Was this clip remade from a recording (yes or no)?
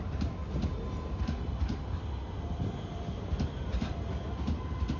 no